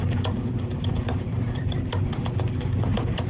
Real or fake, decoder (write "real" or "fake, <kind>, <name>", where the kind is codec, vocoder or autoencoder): real